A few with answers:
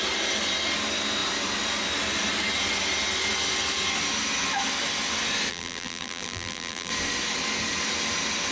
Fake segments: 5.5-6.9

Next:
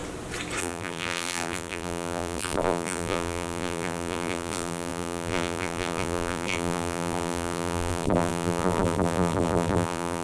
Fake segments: 0.6-10.2